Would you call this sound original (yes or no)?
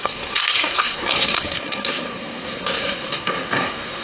no